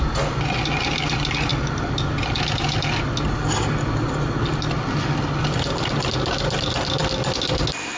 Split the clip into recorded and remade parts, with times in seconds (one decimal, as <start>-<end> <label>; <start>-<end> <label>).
0.0-8.0 recorded